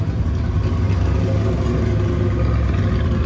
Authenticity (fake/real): real